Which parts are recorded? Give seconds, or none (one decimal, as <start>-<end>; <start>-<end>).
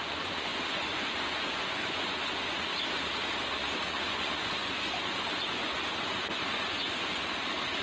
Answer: 2.7-3.5